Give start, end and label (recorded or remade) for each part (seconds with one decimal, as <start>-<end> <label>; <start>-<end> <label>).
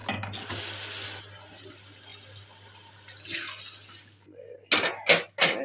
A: 0.0-5.6 recorded